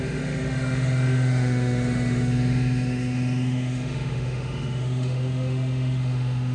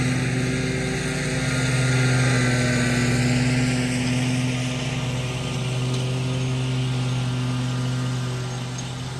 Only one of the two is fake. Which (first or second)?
first